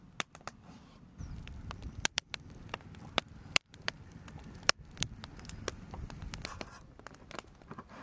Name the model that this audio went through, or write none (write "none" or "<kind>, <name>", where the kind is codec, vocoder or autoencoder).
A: vocoder, BigVGAN v2